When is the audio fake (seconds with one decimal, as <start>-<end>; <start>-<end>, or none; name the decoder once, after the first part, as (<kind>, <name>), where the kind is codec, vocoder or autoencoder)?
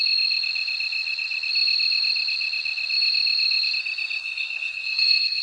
4.2-5.4 (codec, SNAC)